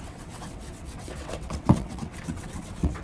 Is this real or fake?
fake